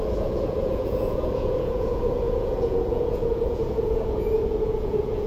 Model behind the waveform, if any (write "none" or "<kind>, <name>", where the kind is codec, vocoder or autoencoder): vocoder, Vocos